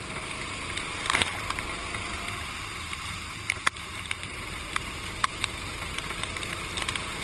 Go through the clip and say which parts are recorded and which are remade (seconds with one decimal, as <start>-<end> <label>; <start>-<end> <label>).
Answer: 0.0-1.3 remade; 1.3-3.8 recorded; 3.8-7.2 remade